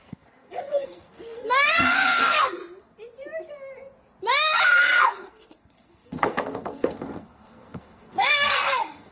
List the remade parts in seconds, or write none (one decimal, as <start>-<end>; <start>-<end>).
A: 0.0-2.6; 5.0-9.1